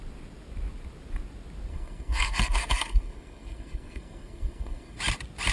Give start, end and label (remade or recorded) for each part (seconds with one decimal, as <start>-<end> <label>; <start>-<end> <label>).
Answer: 0.0-1.7 recorded; 1.7-5.0 remade; 5.0-5.5 recorded